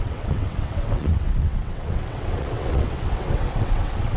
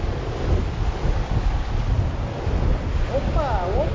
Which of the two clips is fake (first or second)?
first